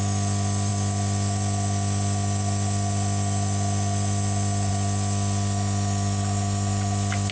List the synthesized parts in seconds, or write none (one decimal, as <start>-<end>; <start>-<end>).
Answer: none